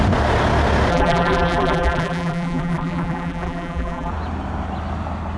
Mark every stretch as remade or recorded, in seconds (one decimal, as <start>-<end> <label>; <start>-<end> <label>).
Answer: 0.0-0.9 recorded; 0.9-4.1 remade; 4.1-5.4 recorded